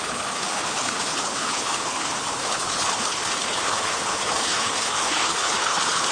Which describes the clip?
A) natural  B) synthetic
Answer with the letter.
B